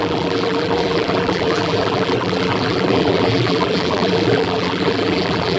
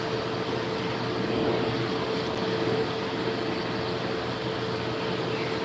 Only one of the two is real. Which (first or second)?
second